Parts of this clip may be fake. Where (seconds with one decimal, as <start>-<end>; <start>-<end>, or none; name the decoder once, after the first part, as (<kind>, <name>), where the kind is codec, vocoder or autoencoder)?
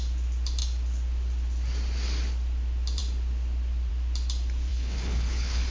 4.7-5.7 (codec, HILCodec)